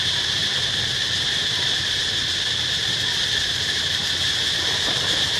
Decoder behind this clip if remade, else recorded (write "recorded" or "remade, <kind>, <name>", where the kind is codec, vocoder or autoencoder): recorded